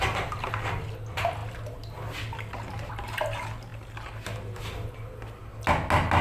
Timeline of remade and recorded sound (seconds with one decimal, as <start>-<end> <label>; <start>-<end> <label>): 0.0-6.2 recorded